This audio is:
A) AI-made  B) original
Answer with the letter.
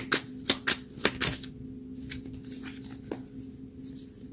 B